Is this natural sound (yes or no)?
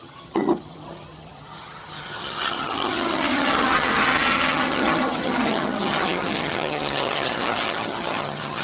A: no